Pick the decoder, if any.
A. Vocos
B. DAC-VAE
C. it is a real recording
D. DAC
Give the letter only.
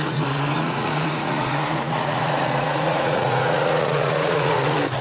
A